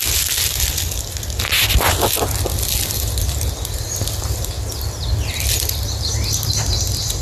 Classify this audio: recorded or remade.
recorded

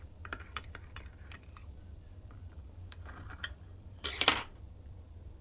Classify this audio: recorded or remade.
remade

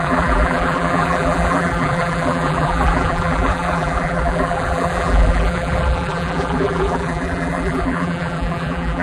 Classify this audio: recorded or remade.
remade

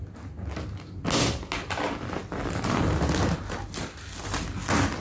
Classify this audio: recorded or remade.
recorded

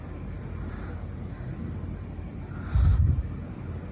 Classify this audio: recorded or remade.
recorded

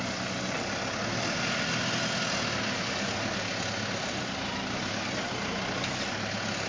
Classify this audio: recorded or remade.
recorded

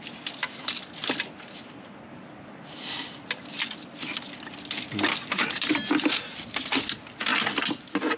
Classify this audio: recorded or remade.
recorded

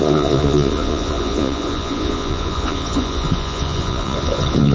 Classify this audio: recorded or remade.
remade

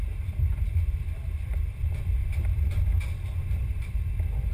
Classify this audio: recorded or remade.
remade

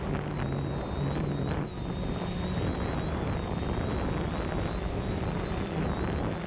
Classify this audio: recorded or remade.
recorded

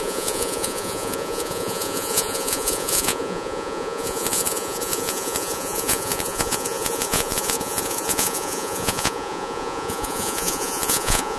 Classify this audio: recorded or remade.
remade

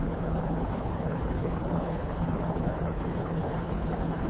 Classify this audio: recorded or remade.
remade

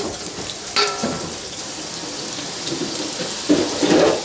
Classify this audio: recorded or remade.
remade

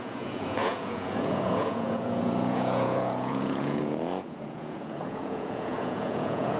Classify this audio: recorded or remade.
remade